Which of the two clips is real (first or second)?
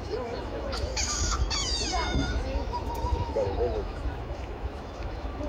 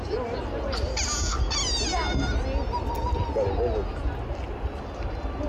second